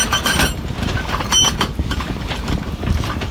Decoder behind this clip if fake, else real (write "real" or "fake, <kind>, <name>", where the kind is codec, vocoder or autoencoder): fake, vocoder, BigVGAN v2